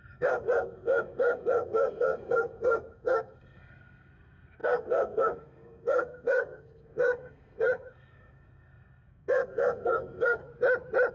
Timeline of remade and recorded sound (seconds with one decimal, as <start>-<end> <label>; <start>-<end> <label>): 0.0-10.4 remade; 10.4-11.1 recorded